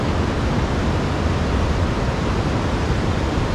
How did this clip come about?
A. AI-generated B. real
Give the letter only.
B